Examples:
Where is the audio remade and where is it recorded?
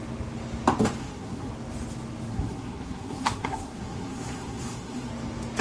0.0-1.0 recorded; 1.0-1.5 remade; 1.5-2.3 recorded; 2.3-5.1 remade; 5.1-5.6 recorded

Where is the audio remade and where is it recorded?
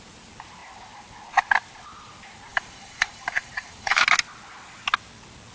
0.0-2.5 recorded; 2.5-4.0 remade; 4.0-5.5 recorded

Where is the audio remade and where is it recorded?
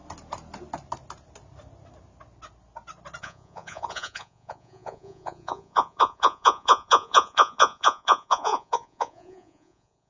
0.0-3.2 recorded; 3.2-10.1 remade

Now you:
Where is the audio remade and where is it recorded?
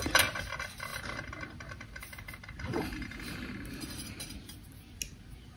0.0-5.6 recorded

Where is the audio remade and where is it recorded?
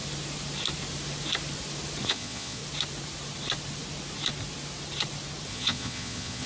0.0-2.1 recorded; 2.1-2.6 remade; 2.6-5.5 recorded; 5.5-6.5 remade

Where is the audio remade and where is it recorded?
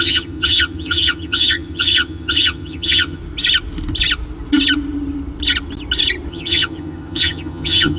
0.0-3.2 remade; 3.2-6.3 recorded; 6.3-8.0 remade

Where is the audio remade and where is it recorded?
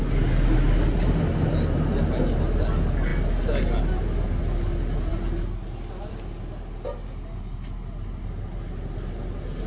0.0-9.7 recorded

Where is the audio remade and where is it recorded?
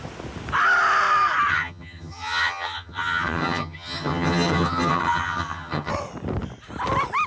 0.0-1.5 recorded; 1.5-5.9 remade; 5.9-7.3 recorded